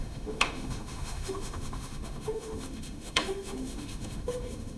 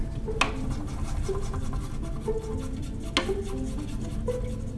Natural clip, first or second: second